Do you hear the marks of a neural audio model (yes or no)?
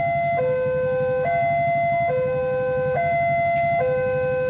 no